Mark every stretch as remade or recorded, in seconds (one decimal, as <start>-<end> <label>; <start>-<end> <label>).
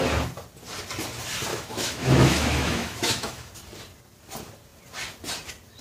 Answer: 0.0-1.5 recorded; 1.5-3.5 remade; 3.5-5.8 recorded